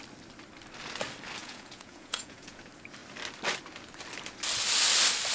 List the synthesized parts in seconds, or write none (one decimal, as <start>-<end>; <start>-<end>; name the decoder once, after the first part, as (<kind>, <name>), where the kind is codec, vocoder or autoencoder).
1.4-2.6 (vocoder, Vocos)